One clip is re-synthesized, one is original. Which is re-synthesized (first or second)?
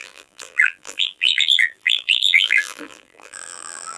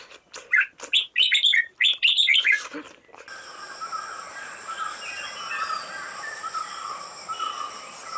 first